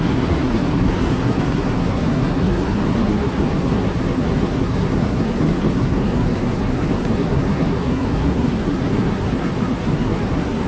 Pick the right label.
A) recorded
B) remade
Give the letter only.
B